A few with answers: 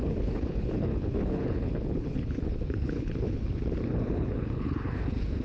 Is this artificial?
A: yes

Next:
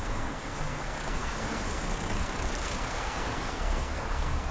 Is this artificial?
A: yes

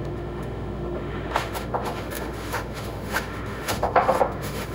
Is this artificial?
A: yes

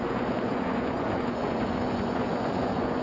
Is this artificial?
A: yes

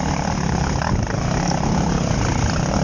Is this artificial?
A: no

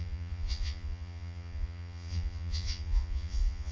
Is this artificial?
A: yes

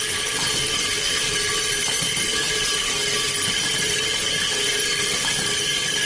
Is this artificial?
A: no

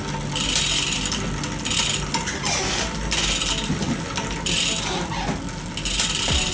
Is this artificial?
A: no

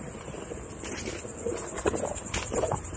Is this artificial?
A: no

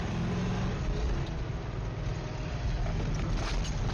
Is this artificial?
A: no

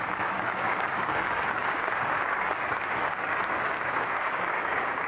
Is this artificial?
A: yes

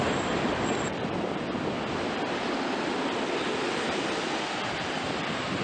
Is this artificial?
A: yes